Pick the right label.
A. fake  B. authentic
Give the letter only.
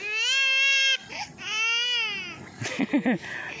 B